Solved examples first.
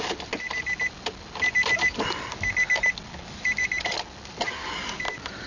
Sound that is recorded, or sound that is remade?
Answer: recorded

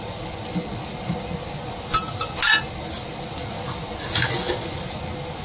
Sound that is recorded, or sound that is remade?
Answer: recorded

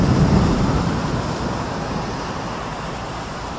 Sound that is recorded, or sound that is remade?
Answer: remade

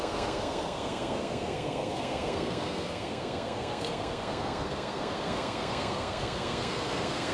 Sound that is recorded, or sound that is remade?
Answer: remade